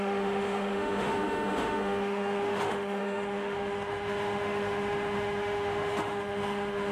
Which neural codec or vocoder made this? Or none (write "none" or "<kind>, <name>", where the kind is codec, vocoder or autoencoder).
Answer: autoencoder, DAC-VAE